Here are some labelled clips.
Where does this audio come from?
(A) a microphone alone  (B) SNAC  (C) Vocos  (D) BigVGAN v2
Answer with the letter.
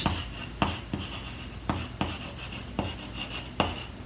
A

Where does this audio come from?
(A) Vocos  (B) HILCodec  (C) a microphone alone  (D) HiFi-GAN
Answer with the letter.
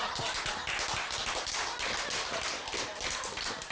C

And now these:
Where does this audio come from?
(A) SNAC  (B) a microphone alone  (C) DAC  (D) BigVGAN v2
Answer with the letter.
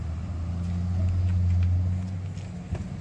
B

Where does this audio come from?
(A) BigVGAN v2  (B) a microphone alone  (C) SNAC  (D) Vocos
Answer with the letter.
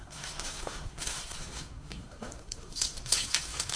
C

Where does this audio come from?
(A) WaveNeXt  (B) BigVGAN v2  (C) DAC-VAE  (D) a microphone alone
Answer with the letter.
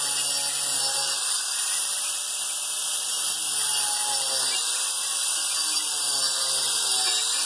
D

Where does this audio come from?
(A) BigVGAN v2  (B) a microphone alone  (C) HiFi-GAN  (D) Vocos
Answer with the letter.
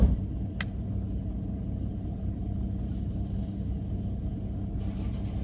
B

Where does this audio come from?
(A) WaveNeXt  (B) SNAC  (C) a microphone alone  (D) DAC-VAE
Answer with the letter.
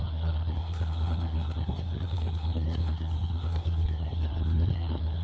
B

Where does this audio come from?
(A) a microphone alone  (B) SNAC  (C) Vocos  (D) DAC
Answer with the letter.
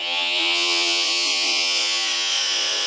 C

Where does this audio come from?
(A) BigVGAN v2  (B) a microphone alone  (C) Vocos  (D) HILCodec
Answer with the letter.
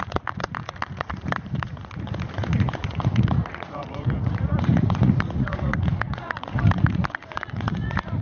C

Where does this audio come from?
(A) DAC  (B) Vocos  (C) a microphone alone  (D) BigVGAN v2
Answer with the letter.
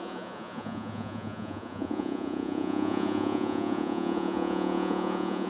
B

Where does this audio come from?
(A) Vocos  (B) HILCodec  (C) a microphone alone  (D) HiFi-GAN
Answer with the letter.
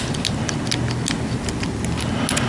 C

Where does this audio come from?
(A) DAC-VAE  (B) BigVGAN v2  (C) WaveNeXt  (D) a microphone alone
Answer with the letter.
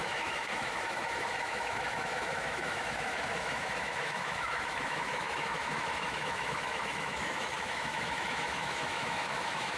A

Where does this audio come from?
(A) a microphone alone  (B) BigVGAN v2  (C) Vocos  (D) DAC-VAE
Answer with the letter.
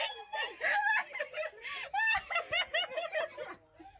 A